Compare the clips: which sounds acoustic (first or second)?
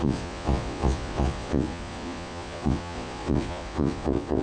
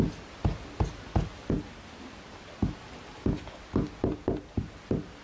second